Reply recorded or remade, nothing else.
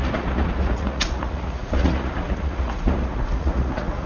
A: remade